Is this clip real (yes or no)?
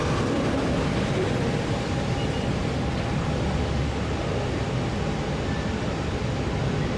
yes